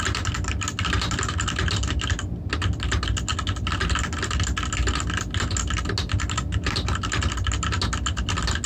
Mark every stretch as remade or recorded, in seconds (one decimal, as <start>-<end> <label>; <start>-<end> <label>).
0.0-8.7 recorded